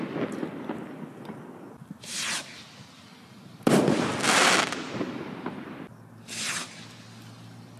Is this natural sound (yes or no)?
yes